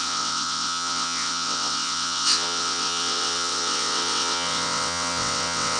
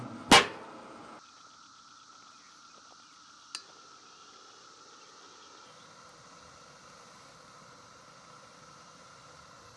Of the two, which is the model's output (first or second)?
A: first